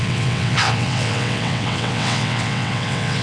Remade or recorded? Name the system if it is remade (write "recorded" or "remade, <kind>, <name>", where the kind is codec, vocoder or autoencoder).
remade, vocoder, WaveNeXt